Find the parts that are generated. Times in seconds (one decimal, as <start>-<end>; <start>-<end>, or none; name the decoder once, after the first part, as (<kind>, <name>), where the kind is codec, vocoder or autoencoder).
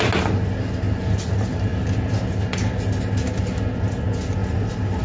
4.4-5.0 (vocoder, BigVGAN v2)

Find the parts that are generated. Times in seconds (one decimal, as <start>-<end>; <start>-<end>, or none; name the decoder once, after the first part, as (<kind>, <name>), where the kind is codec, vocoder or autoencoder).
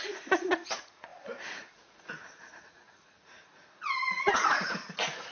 0.0-5.3 (vocoder, Vocos)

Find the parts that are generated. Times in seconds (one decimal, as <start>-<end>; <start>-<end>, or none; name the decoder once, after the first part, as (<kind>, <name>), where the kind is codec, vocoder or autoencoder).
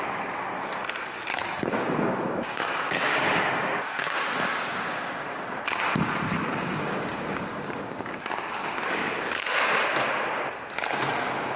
1.3-5.6 (codec, DAC); 6.4-9.7